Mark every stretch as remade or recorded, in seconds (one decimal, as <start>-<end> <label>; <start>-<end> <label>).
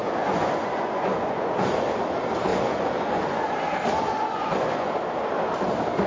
0.0-2.0 remade; 2.0-2.5 recorded; 2.5-3.5 remade; 3.5-4.1 recorded; 4.1-4.9 remade; 4.9-6.1 recorded